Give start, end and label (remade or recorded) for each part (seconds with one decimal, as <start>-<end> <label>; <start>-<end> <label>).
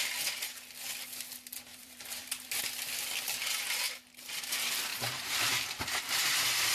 0.0-1.7 recorded; 1.7-2.5 remade; 2.5-4.9 recorded; 4.9-6.3 remade; 6.3-6.7 recorded